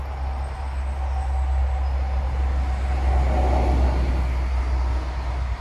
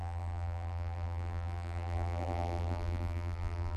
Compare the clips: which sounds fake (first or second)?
second